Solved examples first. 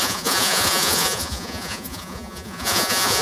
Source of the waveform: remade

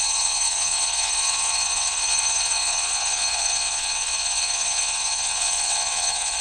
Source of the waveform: remade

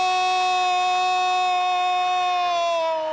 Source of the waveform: recorded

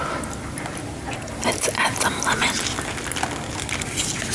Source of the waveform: recorded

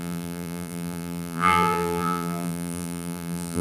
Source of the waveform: remade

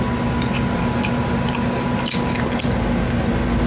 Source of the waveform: recorded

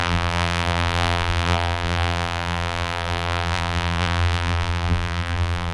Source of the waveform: remade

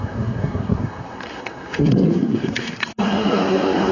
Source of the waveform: remade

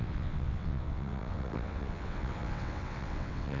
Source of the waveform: remade